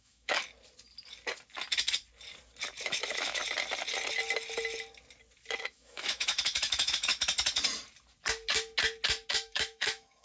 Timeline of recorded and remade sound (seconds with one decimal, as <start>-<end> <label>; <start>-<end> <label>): 0.0-0.4 remade; 0.4-2.8 recorded; 2.8-3.4 remade; 3.4-5.6 recorded; 5.6-7.1 remade; 7.1-9.3 recorded; 9.3-10.2 remade